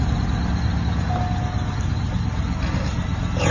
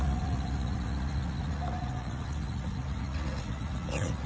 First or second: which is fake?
second